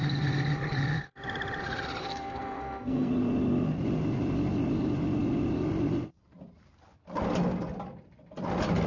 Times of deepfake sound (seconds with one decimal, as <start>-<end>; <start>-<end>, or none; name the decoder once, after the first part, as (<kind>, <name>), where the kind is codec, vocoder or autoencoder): 2.0-3.1 (codec, SNAC)